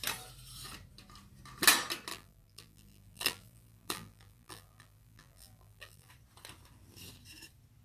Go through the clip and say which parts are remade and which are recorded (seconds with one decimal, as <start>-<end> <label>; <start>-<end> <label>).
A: 0.0-2.1 recorded; 2.1-6.1 remade; 6.1-7.8 recorded